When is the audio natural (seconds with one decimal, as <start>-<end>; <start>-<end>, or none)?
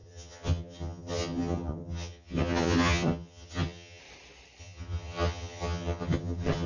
4.0-4.6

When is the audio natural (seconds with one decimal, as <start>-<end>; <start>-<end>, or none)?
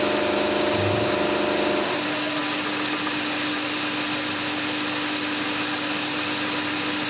0.0-7.1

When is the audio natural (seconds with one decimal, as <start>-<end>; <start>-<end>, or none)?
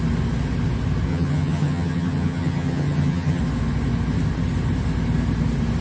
0.0-1.1; 3.4-5.8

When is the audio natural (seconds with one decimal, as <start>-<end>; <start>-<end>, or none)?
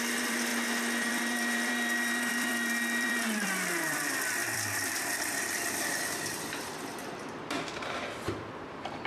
0.5-1.1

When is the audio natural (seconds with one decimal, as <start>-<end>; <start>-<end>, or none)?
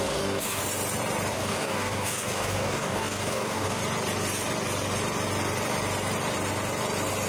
0.6-1.3; 3.8-7.3